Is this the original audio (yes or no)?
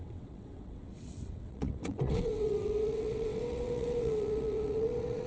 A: no